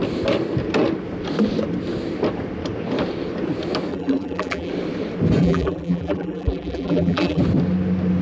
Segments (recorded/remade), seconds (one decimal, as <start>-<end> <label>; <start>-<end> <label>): 0.0-3.9 recorded; 3.9-4.7 remade; 4.7-5.4 recorded; 5.4-7.4 remade; 7.4-8.2 recorded